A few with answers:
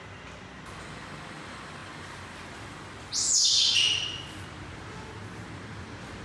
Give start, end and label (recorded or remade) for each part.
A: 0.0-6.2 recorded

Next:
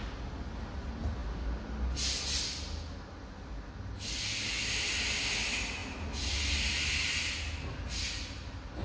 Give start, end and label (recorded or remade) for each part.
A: 0.0-8.8 recorded

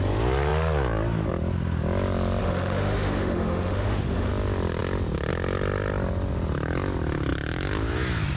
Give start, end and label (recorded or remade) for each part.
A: 0.0-2.4 recorded; 2.4-4.3 remade; 4.3-8.4 recorded

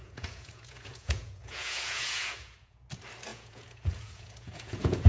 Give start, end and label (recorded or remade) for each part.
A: 0.0-2.9 remade; 2.9-3.3 recorded; 3.3-5.1 remade